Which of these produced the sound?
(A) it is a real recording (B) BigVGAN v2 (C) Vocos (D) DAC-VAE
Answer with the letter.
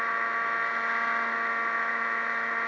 A